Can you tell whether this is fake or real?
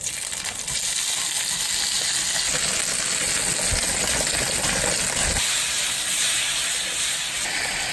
real